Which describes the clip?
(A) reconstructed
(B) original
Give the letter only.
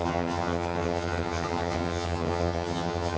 A